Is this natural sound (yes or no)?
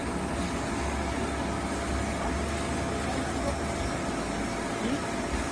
yes